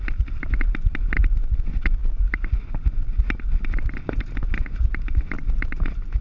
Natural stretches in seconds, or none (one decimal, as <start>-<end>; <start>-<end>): 0.0-6.2